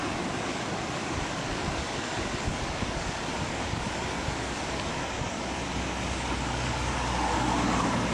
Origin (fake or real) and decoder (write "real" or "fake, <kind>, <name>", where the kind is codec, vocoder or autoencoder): fake, codec, DAC